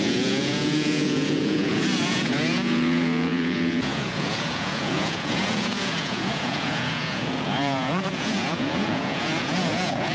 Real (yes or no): no